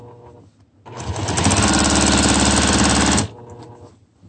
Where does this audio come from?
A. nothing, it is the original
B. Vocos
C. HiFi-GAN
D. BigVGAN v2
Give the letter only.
A